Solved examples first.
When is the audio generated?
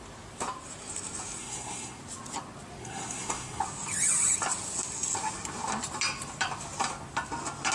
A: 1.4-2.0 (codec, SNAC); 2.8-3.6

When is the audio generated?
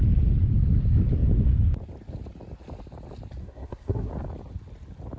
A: 3.4-4.1 (codec, SNAC)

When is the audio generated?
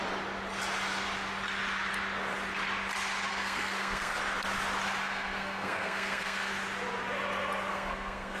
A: 3.3-4.2 (codec, SNAC); 5.0-6.5; 7.7-8.4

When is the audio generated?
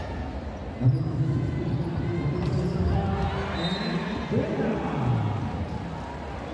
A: none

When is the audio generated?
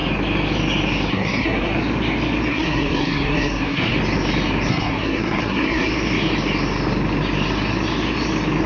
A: 1.1-1.7 (codec, SNAC); 2.5-3.9; 4.7-5.9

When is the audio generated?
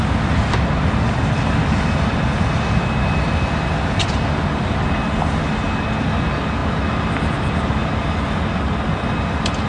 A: none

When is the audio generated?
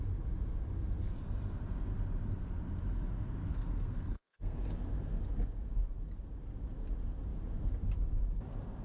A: 3.5-4.7 (codec, SNAC)